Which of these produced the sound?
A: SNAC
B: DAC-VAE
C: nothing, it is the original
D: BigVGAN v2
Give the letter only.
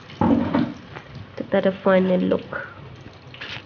C